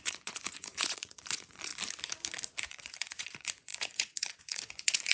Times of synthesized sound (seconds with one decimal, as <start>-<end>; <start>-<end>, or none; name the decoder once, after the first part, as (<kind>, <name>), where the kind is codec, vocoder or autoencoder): 0.0-1.7 (vocoder, Vocos); 2.7-5.1